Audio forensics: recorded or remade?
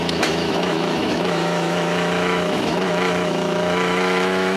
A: remade